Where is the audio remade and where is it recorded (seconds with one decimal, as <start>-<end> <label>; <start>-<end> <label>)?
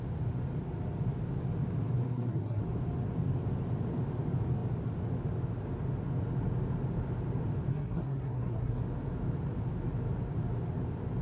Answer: 0.0-2.0 recorded; 2.0-2.6 remade; 2.6-7.7 recorded; 7.7-8.8 remade; 8.8-11.2 recorded